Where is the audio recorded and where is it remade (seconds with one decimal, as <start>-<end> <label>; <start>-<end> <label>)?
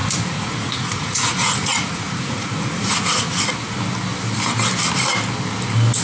0.0-3.4 remade; 3.4-6.0 recorded